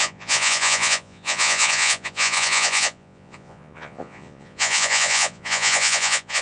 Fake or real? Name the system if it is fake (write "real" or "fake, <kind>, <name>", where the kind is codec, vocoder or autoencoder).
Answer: fake, vocoder, Vocos